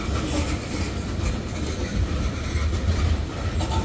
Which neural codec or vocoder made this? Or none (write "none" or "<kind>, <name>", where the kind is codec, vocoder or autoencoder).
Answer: none